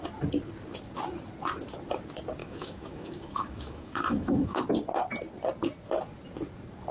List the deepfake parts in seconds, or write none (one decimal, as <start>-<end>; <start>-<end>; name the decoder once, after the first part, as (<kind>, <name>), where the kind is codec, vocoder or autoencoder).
2.4-4.6 (autoencoder, DAC-VAE)